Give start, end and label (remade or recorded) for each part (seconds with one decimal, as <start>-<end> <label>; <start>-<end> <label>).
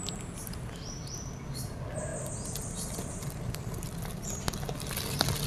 0.0-5.5 recorded